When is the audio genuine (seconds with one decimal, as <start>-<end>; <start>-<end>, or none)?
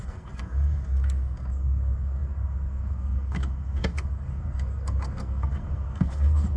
none